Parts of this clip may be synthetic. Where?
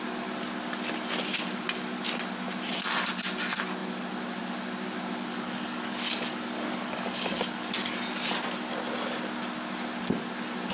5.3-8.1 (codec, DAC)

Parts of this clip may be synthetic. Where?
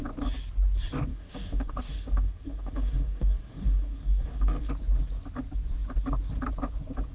1.1-4.7 (codec, DAC)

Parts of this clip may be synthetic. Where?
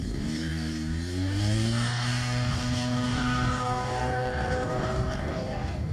0.0-5.9 (codec, DAC)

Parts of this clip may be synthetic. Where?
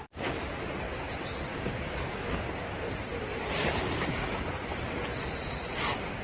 1.5-2.6 (codec, DAC)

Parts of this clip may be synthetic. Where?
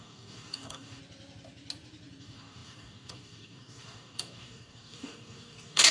0.0-1.0 (codec, DAC); 2.2-5.9